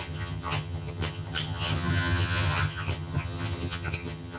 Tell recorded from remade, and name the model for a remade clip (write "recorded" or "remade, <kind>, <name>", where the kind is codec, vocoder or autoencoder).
remade, vocoder, HiFi-GAN